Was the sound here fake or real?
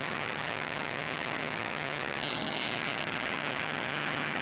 fake